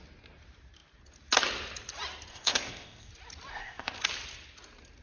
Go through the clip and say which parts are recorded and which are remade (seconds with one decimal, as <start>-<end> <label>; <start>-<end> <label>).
0.0-2.3 recorded; 2.3-3.1 remade; 3.1-3.5 recorded; 3.5-4.0 remade; 4.0-5.0 recorded